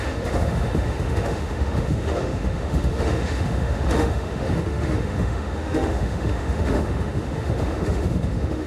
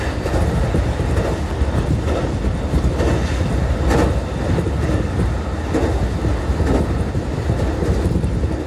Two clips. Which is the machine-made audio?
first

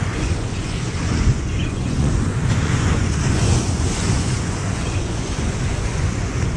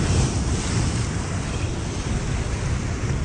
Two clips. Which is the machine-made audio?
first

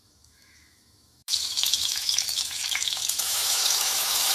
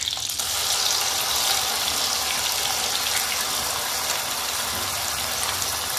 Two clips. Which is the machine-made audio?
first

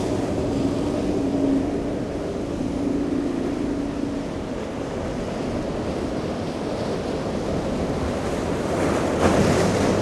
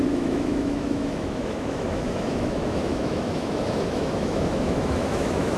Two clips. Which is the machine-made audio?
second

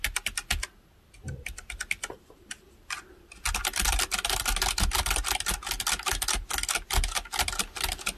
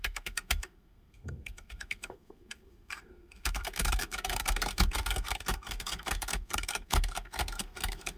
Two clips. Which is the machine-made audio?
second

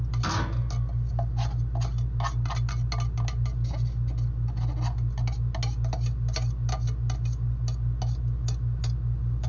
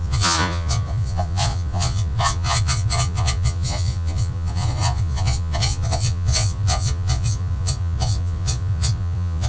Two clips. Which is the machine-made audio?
second